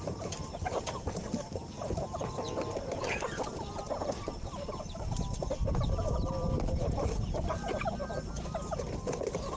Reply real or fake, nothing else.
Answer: fake